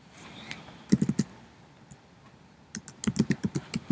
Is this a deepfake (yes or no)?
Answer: no